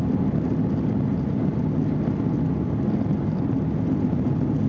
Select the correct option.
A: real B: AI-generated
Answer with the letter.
A